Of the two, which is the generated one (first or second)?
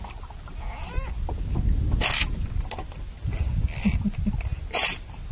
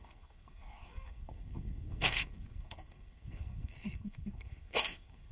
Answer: second